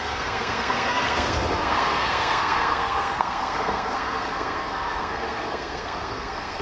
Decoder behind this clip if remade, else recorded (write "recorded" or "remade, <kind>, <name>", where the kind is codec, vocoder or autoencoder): remade, codec, SNAC